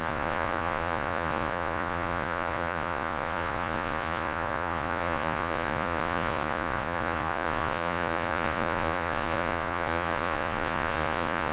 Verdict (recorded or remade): remade